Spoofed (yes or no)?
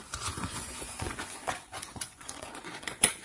yes